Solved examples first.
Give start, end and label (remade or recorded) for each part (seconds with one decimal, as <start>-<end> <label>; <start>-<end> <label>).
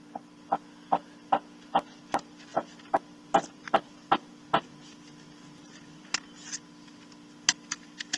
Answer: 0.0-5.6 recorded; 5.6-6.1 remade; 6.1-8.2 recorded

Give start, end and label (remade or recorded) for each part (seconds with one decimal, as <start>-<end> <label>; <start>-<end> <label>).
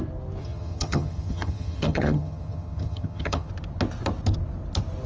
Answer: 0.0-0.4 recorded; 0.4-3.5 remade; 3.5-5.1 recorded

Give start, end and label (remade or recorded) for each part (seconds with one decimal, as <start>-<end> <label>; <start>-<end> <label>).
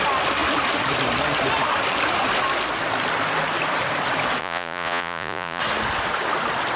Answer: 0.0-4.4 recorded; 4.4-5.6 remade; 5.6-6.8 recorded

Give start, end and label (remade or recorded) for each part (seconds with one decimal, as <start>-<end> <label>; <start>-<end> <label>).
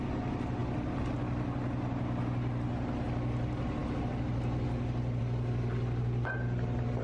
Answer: 0.0-7.0 recorded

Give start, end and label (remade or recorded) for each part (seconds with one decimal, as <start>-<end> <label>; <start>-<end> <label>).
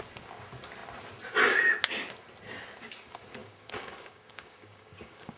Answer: 0.0-3.4 recorded; 3.4-5.4 remade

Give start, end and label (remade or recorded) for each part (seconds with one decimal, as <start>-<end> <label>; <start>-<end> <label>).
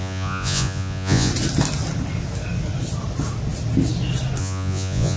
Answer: 0.0-1.3 remade; 1.3-4.4 recorded; 4.4-5.2 remade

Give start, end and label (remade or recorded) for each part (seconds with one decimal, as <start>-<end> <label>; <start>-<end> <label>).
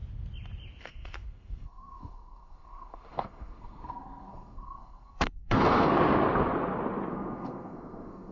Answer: 0.0-0.8 recorded; 0.8-5.9 remade; 5.9-7.1 recorded; 7.1-8.3 remade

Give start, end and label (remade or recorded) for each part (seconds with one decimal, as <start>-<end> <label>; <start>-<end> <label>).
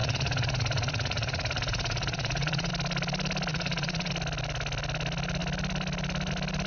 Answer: 0.0-2.7 remade; 2.7-3.5 recorded; 3.5-4.1 remade; 4.1-6.7 recorded